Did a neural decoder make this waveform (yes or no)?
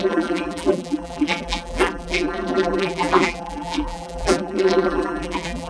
yes